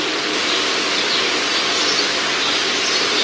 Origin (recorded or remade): recorded